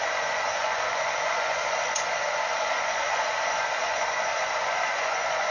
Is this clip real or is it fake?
fake